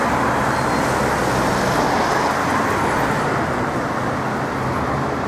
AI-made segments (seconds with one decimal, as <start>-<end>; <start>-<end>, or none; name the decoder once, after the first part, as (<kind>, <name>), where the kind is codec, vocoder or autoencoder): none